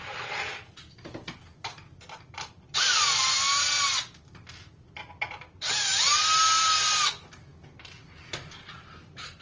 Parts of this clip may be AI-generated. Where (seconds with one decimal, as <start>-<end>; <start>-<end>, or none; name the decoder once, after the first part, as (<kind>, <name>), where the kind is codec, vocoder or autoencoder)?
none